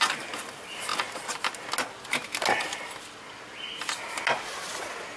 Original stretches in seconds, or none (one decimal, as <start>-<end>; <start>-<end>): 0.0-5.2